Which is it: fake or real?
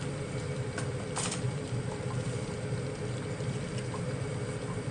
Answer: fake